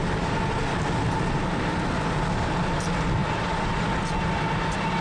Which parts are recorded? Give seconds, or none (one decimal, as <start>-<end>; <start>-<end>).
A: 0.0-5.0